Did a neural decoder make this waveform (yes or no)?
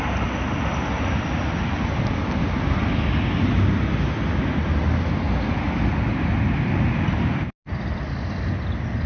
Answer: no